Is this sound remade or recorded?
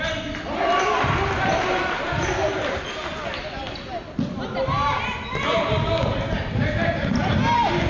recorded